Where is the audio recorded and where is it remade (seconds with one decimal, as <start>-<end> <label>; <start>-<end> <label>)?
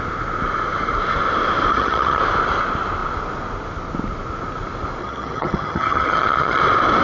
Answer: 0.0-1.7 recorded; 1.7-2.2 remade; 2.2-5.0 recorded; 5.0-6.6 remade; 6.6-7.0 recorded